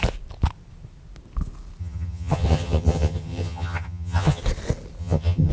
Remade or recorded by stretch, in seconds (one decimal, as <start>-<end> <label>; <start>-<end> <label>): 0.0-1.8 recorded; 1.8-4.4 remade; 4.4-5.0 recorded; 5.0-5.5 remade